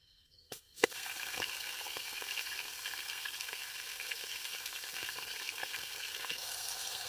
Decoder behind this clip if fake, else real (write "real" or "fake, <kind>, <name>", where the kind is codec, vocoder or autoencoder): fake, codec, SNAC